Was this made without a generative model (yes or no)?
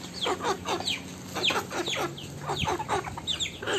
yes